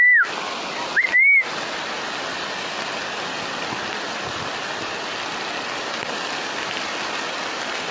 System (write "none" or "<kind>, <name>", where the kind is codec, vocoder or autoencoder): none